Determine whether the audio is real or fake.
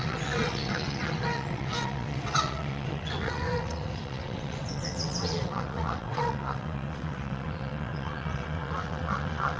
fake